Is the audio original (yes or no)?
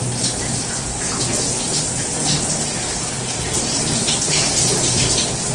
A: yes